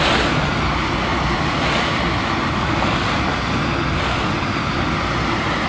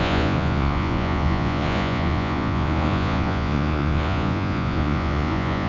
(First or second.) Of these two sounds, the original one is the first